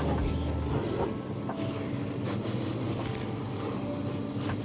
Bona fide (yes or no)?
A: yes